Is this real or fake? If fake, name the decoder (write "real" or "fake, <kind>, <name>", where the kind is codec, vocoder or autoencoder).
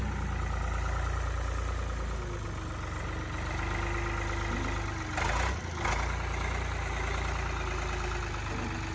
real